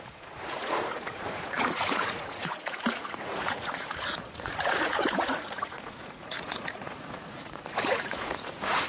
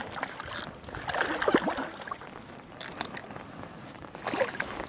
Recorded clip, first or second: second